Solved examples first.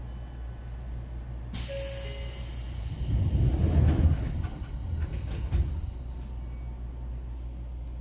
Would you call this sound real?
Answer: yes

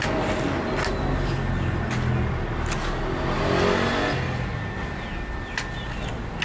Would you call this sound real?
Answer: yes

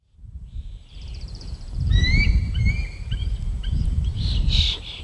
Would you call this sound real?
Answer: no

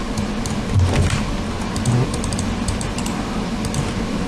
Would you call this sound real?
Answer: yes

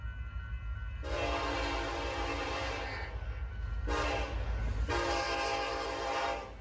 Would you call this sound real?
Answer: yes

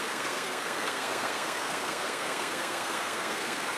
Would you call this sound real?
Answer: no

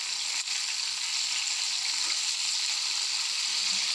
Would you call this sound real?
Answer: yes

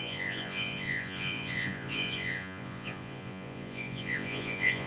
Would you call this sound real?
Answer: no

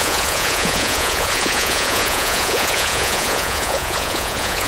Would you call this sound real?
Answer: no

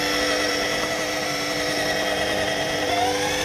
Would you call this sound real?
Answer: no